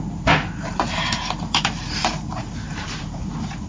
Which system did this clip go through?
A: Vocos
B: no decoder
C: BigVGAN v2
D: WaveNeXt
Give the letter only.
C